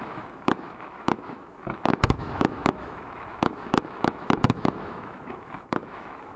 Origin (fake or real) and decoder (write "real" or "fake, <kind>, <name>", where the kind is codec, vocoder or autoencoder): fake, autoencoder, DAC-VAE